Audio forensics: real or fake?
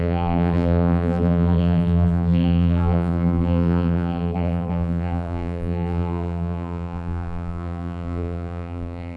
fake